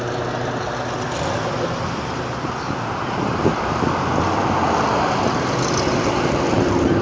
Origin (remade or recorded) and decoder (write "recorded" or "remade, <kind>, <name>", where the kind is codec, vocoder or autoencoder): recorded